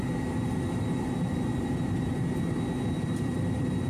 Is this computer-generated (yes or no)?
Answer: no